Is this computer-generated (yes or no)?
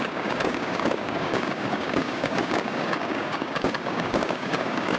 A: yes